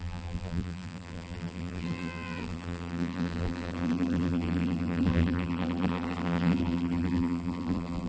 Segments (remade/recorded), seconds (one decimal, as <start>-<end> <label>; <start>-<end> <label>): 0.0-8.1 remade